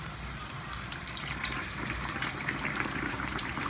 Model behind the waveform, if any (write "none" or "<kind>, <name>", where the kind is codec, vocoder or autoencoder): vocoder, BigVGAN v2